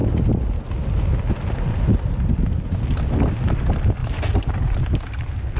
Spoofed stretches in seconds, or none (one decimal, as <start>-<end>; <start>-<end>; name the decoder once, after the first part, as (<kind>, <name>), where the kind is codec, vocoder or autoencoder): none